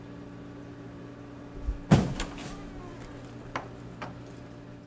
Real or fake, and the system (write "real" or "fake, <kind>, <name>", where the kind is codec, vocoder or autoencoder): real